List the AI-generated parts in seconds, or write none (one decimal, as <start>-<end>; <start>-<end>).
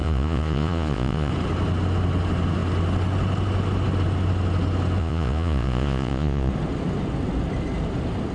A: 0.0-1.3; 5.0-6.5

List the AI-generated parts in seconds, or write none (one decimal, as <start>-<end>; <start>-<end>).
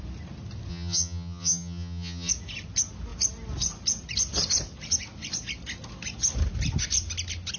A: 0.7-2.3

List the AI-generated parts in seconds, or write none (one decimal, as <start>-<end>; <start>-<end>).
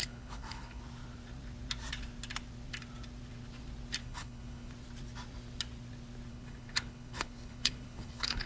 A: 0.0-0.8; 4.0-4.7; 6.3-8.5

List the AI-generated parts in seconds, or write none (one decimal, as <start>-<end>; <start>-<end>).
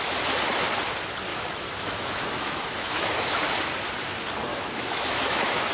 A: 1.3-3.4; 4.5-5.7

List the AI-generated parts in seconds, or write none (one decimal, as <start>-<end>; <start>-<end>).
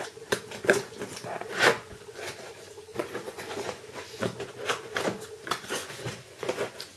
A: 0.0-7.0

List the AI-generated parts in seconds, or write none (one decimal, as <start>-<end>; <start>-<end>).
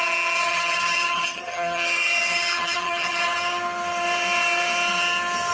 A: 0.4-3.2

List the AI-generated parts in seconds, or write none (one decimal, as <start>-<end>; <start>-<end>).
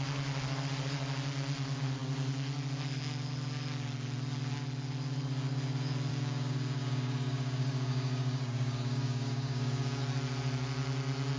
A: 6.1-10.0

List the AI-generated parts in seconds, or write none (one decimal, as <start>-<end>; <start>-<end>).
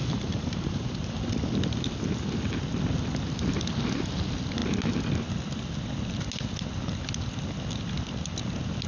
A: 0.0-1.2